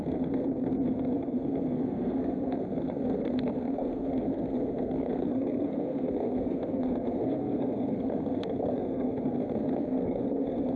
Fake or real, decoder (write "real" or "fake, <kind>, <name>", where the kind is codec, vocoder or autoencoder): fake, codec, SNAC